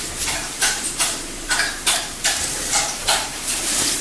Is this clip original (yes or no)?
no